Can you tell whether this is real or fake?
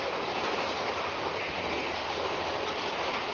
real